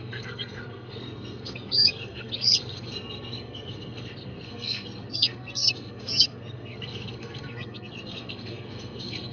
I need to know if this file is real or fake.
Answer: fake